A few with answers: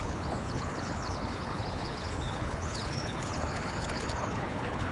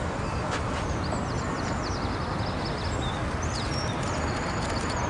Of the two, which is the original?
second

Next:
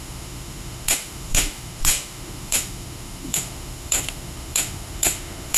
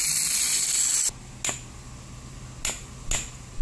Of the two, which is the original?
second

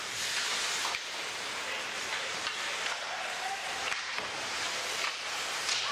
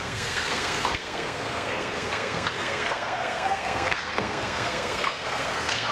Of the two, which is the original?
first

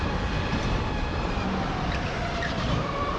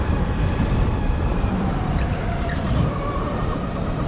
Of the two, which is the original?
first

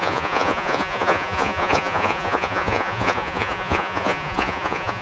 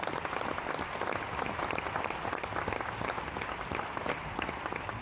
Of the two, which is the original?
second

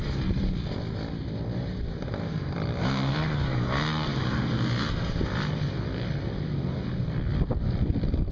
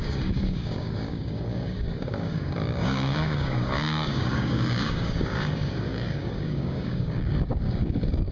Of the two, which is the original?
first